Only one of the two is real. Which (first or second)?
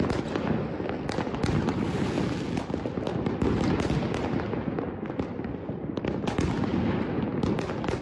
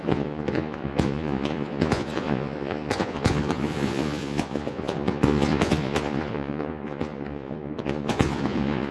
first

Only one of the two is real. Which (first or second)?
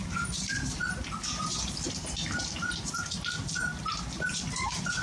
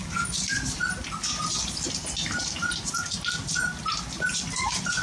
second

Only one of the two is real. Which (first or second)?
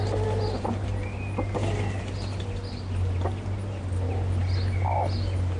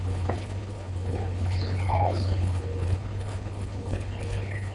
first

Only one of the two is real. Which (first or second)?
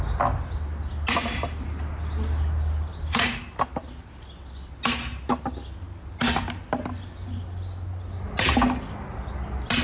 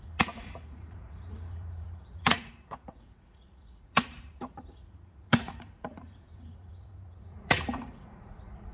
first